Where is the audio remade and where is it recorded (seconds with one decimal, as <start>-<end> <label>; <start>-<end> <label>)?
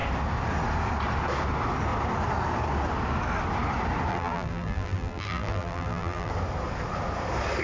0.0-4.1 recorded; 4.1-6.3 remade; 6.3-7.6 recorded